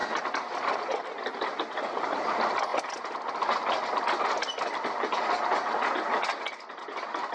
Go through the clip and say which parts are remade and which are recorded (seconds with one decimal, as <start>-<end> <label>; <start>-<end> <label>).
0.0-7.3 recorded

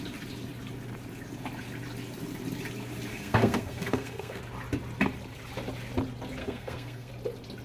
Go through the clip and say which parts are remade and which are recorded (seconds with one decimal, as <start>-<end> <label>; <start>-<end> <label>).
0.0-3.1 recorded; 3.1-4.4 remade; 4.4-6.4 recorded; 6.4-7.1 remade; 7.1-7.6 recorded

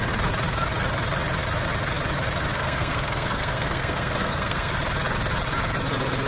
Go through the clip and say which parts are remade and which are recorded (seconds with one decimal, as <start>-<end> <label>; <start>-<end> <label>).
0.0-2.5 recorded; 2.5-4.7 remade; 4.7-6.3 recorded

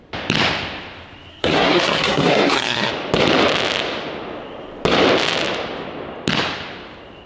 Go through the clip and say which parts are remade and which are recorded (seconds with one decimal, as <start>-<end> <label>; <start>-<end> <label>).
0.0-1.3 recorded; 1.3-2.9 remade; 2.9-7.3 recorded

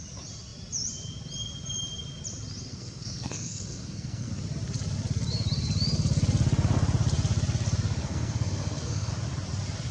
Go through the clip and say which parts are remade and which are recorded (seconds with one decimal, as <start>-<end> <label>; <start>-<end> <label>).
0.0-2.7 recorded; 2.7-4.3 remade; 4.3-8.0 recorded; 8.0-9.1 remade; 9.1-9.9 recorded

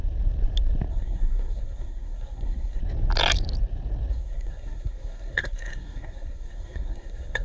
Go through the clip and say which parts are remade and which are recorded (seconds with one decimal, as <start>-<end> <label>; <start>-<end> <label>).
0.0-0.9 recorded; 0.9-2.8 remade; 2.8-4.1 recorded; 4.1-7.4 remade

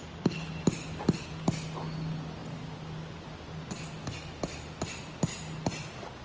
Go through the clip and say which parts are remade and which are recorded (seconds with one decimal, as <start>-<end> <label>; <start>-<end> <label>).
0.0-6.2 recorded

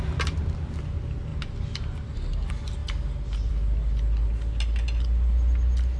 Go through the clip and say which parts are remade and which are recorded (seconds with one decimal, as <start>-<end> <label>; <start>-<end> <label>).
0.0-6.0 recorded